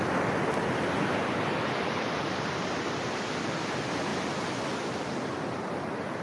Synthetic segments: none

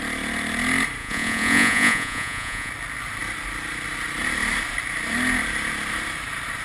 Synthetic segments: 1.0-2.7 (vocoder, Vocos)

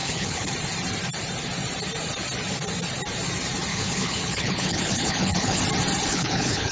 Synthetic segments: 0.0-0.5 (codec, HILCodec); 3.7-5.6; 6.1-6.7

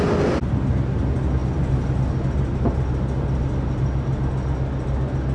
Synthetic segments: none